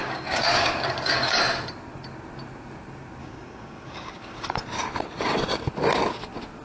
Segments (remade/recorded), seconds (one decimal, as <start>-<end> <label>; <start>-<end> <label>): 0.0-1.4 remade; 1.4-3.2 recorded; 3.2-4.6 remade; 4.6-6.6 recorded